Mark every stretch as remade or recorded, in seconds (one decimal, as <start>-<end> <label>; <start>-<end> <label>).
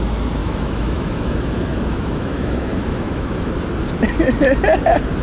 0.0-0.4 recorded; 0.4-3.5 remade; 3.5-5.2 recorded